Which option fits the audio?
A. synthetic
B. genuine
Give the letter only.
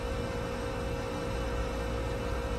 B